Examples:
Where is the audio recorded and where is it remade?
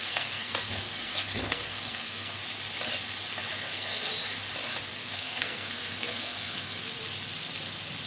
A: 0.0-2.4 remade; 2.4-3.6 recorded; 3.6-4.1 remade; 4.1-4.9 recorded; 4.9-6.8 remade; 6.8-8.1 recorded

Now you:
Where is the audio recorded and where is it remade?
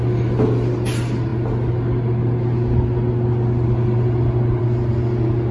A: 0.0-5.5 recorded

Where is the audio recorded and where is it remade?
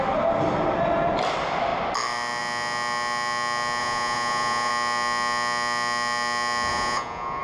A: 0.0-3.8 recorded; 3.8-4.7 remade; 4.7-6.7 recorded; 6.7-7.4 remade